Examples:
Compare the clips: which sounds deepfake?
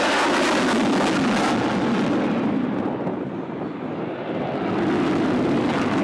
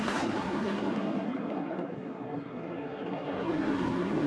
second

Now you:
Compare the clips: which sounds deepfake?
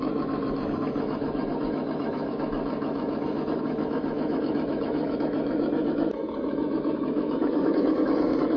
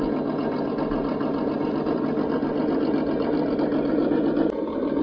first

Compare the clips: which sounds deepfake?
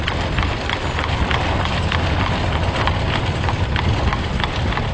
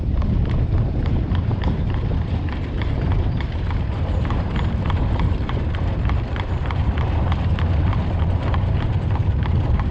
second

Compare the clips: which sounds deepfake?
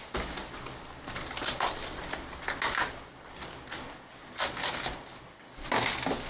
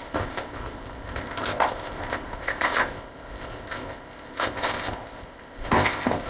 second